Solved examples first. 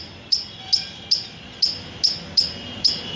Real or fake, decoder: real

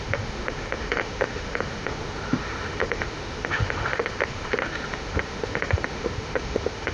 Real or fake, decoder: fake, autoencoder, DAC-VAE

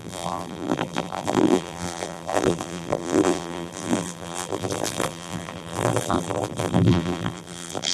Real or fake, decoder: fake, vocoder, BigVGAN v2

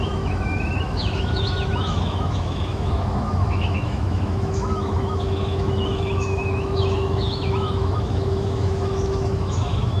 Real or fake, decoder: fake, autoencoder, DAC-VAE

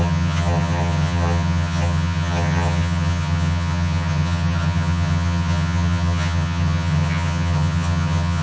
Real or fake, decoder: fake, vocoder, HiFi-GAN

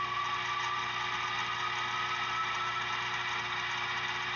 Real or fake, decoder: real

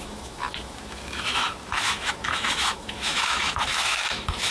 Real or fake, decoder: fake, autoencoder, DAC-VAE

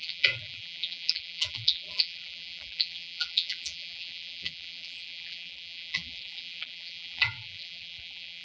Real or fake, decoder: fake, vocoder, BigVGAN v2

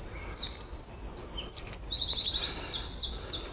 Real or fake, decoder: real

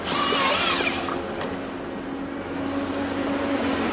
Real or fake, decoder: real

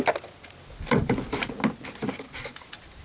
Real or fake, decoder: real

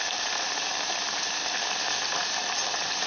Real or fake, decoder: real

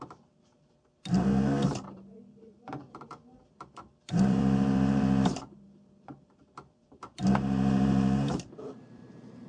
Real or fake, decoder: fake, vocoder, BigVGAN v2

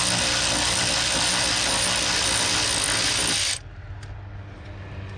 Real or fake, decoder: real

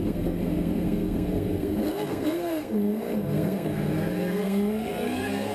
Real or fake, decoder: fake, codec, SNAC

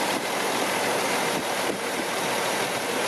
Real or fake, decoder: fake, vocoder, BigVGAN v2